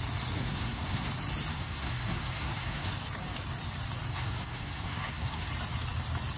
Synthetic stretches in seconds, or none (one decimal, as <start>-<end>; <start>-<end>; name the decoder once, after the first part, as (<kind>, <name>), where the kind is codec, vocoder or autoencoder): 0.4-1.1 (codec, SNAC); 1.5-2.9; 4.1-5.5